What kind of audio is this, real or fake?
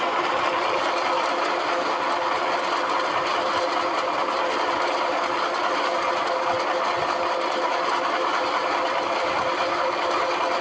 real